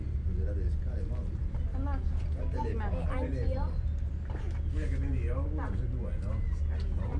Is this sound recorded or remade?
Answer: recorded